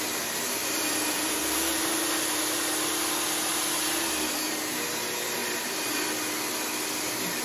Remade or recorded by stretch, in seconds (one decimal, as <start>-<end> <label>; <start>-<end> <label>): 0.0-0.6 recorded; 0.6-2.4 remade; 2.4-7.4 recorded